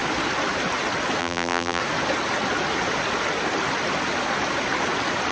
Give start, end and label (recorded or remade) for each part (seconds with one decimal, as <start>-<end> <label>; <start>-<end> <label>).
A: 0.0-1.2 recorded; 1.2-1.8 remade; 1.8-5.3 recorded